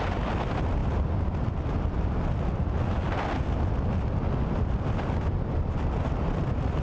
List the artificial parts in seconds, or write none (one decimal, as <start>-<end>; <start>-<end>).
none